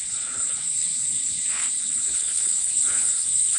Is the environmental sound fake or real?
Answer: fake